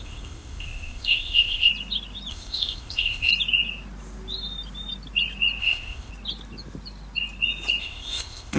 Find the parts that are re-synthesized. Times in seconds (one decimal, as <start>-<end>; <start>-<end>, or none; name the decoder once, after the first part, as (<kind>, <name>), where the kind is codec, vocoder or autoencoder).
0.0-1.7 (codec, ZipCodec); 2.3-3.3; 5.6-6.1; 7.8-8.6